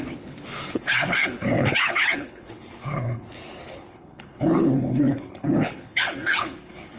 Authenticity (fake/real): fake